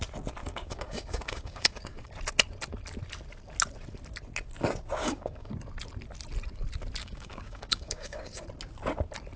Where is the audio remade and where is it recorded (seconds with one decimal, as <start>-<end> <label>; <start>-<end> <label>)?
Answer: 0.0-0.4 recorded; 0.4-2.1 remade; 2.1-5.0 recorded; 5.0-5.5 remade; 5.5-7.0 recorded; 7.0-8.4 remade; 8.4-9.4 recorded